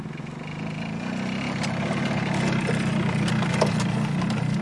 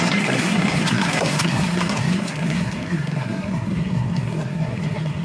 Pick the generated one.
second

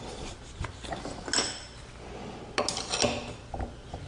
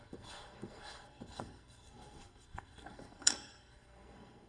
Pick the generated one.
second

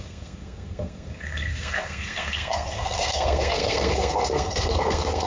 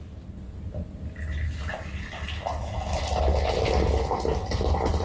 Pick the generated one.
first